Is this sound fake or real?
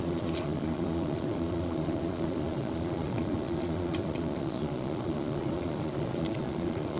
fake